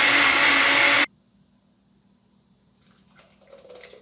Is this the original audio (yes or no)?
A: yes